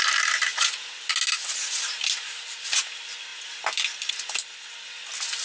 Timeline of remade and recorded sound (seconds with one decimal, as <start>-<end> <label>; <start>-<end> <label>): 0.0-0.5 recorded; 0.5-1.1 remade; 1.1-5.4 recorded